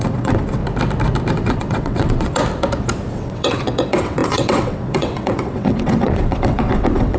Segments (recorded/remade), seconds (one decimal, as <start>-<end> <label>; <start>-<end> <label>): 0.0-0.6 remade; 0.6-1.3 recorded; 1.3-2.4 remade; 2.4-3.1 recorded; 3.1-7.2 remade